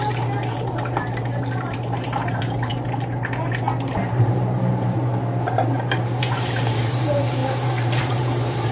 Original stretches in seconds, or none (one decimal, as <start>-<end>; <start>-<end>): 2.7-4.0